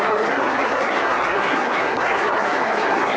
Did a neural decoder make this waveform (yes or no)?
yes